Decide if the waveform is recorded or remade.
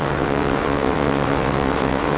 remade